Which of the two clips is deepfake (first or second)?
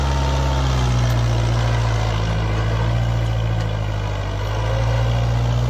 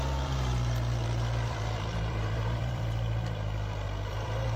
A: second